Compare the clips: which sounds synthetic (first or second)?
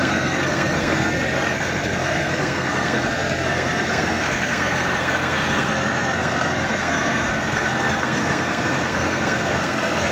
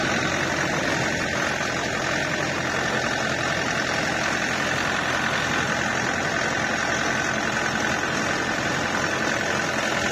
first